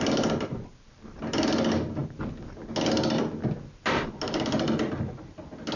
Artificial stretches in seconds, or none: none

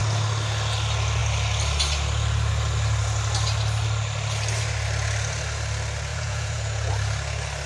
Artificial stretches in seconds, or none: 6.1-6.9 (vocoder, Vocos)

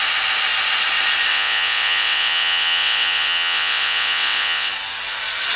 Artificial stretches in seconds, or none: 1.3-4.7 (vocoder, WaveNeXt)

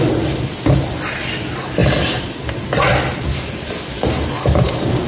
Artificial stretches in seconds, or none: none

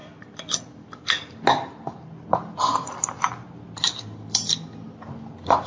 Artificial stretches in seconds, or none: none

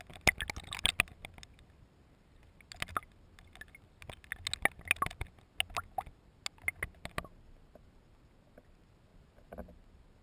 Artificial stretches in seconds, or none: none

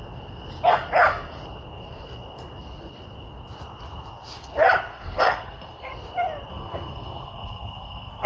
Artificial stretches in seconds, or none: 4.9-5.9 (codec, SNAC); 6.5-8.3

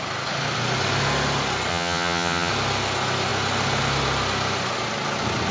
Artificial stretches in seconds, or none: 1.7-2.5 (vocoder, HiFi-GAN)